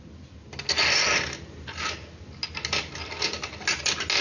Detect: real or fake real